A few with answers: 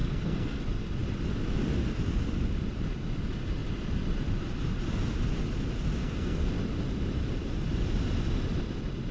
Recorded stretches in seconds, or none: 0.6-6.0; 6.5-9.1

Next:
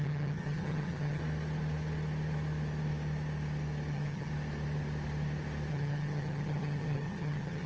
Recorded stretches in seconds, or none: 1.2-3.9; 4.3-5.7

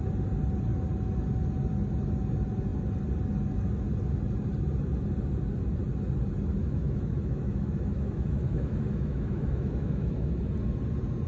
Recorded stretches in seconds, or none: 0.0-6.6; 10.4-11.3

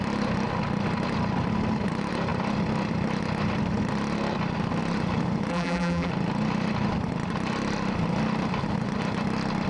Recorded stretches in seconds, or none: 0.0-5.5; 6.1-9.7

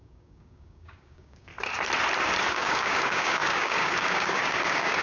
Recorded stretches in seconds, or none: 1.5-2.5